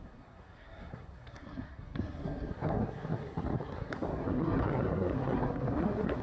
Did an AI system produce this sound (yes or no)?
yes